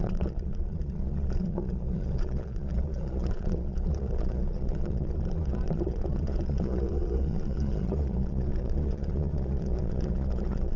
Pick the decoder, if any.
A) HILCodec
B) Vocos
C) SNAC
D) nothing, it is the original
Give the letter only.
B